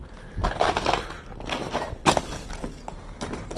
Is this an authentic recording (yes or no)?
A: yes